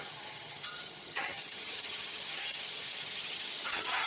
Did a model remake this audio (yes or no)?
yes